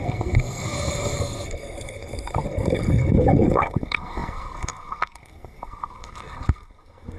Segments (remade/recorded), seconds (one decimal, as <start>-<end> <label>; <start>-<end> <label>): 0.0-7.2 remade